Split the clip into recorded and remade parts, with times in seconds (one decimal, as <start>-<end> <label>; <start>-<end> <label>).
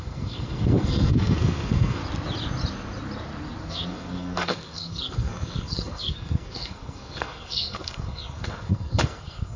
0.0-2.0 remade; 2.0-3.7 recorded; 3.7-9.6 remade